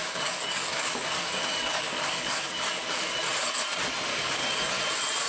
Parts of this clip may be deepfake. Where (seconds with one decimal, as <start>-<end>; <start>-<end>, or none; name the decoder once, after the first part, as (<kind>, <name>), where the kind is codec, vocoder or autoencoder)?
0.0-3.2 (codec, DAC); 4.1-4.7